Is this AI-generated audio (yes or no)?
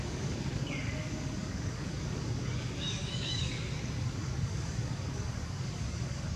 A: yes